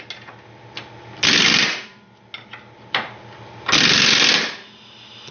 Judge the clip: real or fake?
real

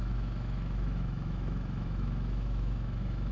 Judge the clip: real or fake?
fake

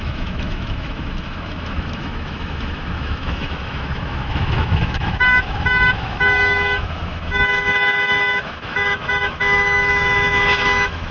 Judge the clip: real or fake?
fake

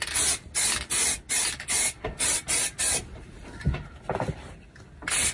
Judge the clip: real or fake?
real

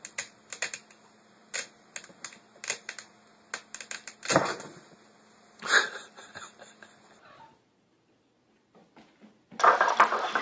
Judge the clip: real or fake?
real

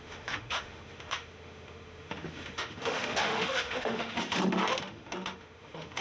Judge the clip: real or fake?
fake